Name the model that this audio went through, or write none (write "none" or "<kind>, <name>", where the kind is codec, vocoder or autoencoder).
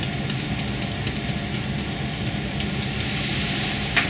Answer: none